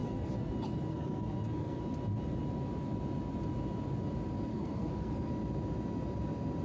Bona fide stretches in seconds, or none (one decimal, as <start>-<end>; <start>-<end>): 0.5-0.9; 1.8-4.5; 5.3-6.6